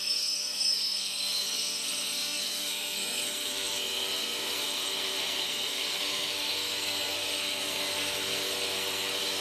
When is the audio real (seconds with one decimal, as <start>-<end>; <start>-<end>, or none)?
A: none